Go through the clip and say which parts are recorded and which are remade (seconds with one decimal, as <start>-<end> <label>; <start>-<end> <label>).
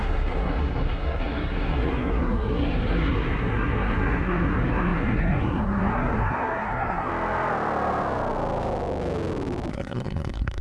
0.0-7.1 remade; 7.1-9.7 recorded; 9.7-10.6 remade